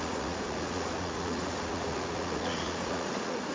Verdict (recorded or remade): remade